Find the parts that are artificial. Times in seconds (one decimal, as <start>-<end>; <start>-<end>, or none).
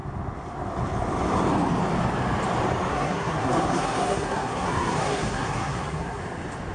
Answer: 2.9-6.2